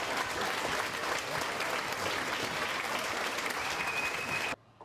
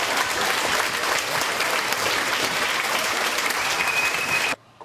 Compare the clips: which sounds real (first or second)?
first